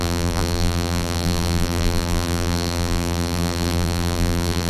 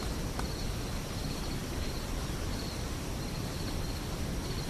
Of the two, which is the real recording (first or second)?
second